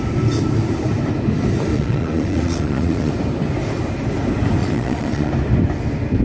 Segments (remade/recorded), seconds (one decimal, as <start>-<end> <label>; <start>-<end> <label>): 0.0-1.7 recorded; 1.7-3.1 remade; 3.1-4.6 recorded; 4.6-5.3 remade; 5.3-6.2 recorded